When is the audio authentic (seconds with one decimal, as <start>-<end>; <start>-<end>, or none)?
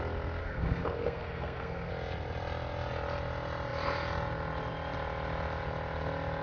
0.0-0.4; 1.9-6.4